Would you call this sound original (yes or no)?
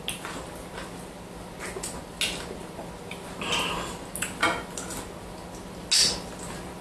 yes